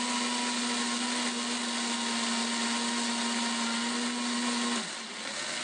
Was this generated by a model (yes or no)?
no